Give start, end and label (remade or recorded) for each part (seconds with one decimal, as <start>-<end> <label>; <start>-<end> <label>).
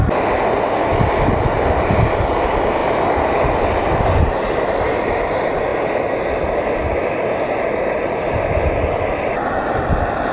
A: 0.0-10.3 recorded